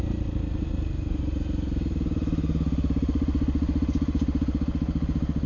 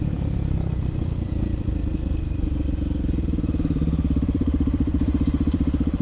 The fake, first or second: second